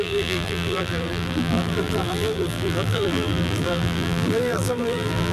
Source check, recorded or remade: remade